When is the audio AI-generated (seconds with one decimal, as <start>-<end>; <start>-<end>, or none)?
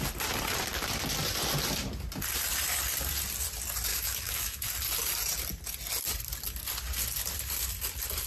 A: 3.9-4.7